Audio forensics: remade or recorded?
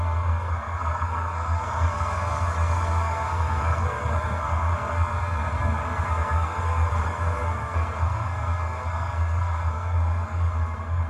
remade